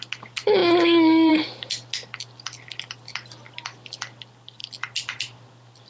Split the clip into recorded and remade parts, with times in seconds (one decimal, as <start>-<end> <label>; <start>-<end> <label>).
0.0-5.9 recorded